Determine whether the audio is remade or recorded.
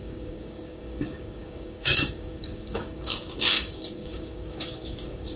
remade